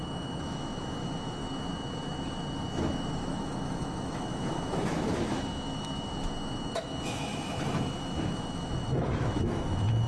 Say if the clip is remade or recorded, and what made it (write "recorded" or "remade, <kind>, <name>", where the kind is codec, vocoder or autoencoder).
remade, autoencoder, DAC-VAE